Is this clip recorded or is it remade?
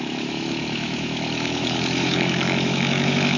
remade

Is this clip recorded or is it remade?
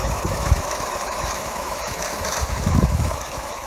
remade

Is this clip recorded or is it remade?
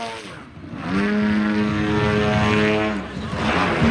recorded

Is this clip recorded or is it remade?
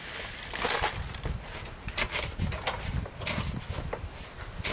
recorded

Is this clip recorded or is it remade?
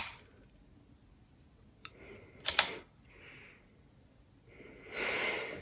recorded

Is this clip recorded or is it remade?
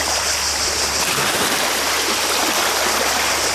recorded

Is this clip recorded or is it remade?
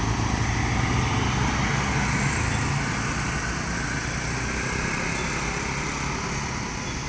recorded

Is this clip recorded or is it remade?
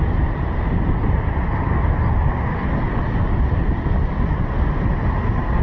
recorded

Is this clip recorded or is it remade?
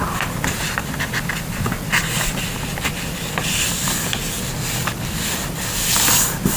recorded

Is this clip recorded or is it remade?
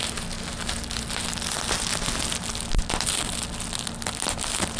recorded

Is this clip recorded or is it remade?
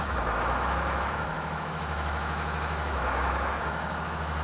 remade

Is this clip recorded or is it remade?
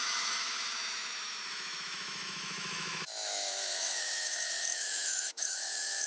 remade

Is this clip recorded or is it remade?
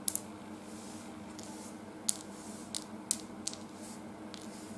recorded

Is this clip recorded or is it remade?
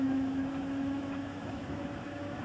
remade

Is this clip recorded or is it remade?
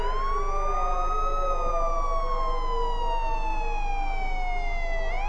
recorded